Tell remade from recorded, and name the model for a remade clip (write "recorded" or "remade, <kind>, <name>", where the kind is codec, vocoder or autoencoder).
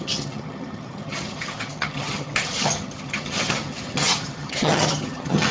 remade, vocoder, HiFi-GAN